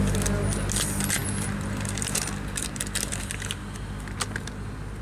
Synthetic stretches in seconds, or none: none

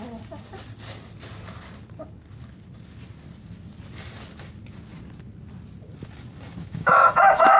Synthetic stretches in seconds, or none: 6.6-7.6 (autoencoder, DAC-VAE)

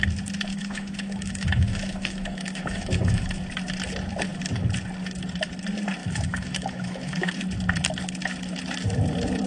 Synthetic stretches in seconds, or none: 0.5-3.3 (autoencoder, DAC-VAE); 6.0-7.3

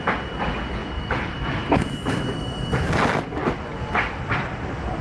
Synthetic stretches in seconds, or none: 0.8-2.9 (autoencoder, DAC-VAE)

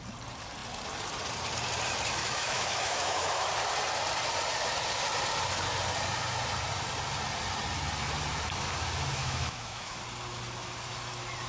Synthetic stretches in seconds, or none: 2.2-3.5 (autoencoder, DAC-VAE); 9.2-10.0

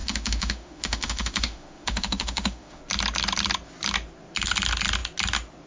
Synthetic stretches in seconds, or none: 0.0-2.8 (autoencoder, DAC-VAE)

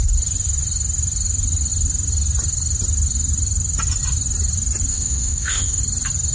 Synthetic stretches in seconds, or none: 4.9-5.8 (autoencoder, DAC-VAE)

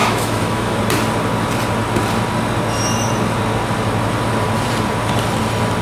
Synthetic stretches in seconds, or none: 0.0-0.8 (autoencoder, DAC-VAE)